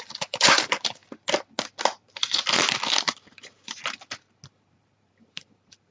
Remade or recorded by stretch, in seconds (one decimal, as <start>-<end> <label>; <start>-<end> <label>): 0.0-1.0 remade; 1.0-4.5 recorded; 4.5-5.9 remade